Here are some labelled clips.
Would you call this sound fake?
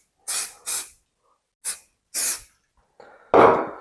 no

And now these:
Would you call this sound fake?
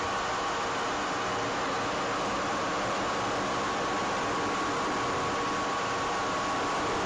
no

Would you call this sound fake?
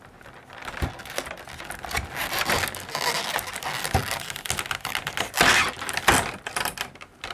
no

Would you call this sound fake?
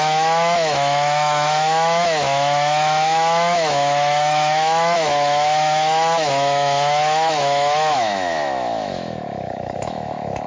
yes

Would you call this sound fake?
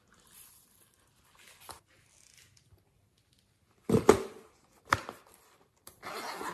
no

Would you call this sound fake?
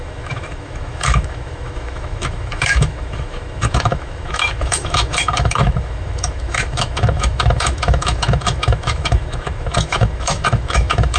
yes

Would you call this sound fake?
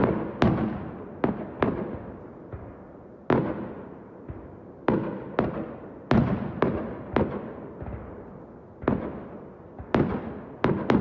no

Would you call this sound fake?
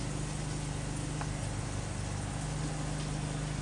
no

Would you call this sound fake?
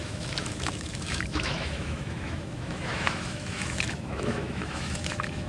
yes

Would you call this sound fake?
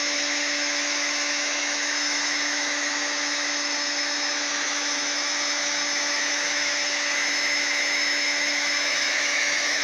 yes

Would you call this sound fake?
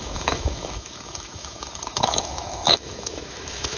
yes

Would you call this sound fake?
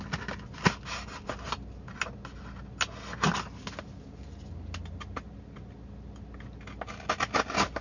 no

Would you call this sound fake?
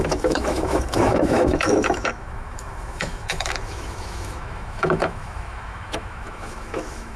yes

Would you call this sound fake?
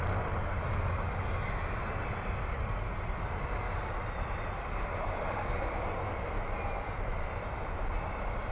no